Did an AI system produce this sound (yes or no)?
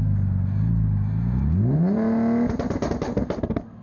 no